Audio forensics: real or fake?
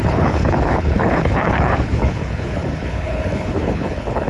fake